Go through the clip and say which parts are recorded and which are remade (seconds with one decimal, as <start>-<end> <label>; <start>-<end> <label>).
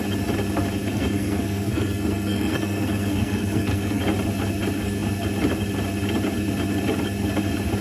0.0-0.9 recorded; 0.9-4.0 remade; 4.0-7.8 recorded